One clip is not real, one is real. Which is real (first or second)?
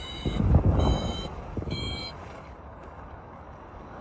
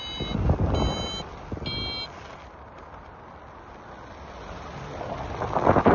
second